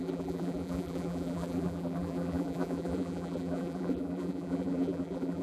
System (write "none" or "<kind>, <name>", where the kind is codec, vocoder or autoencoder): vocoder, BigVGAN v2